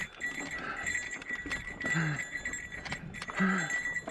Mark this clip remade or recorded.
recorded